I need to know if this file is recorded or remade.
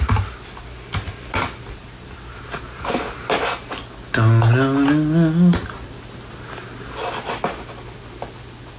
recorded